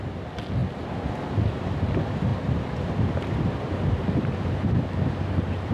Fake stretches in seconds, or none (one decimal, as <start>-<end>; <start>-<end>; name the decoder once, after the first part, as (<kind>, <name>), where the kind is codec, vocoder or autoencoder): none